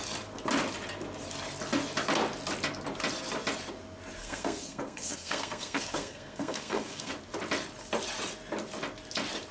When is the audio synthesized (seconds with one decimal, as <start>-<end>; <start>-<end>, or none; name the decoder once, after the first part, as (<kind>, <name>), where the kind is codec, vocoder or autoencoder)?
4.2-7.1 (codec, SNAC)